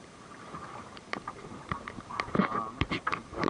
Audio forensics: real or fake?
fake